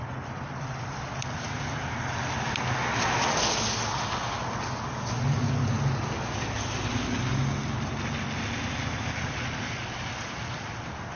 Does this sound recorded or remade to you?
recorded